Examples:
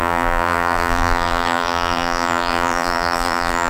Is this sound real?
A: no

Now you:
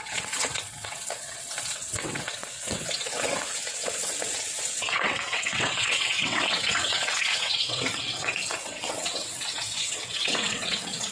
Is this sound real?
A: no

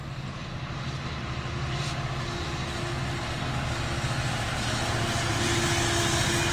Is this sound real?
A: yes